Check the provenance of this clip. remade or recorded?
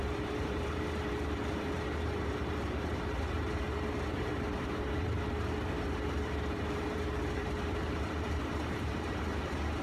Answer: remade